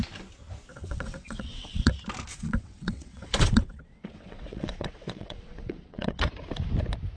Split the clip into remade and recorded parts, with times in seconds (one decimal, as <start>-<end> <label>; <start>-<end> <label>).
0.0-0.7 recorded; 0.7-1.9 remade; 1.9-2.3 recorded; 2.3-6.3 remade; 6.3-7.2 recorded